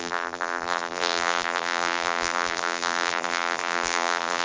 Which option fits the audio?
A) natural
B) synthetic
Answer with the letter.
B